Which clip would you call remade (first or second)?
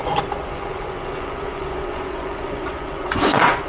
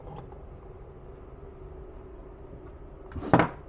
first